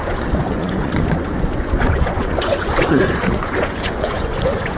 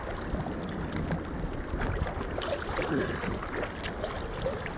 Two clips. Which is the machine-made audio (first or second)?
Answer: first